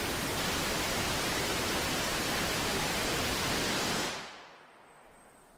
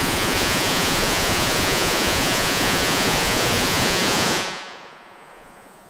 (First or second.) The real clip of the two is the first